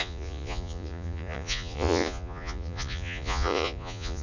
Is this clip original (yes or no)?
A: no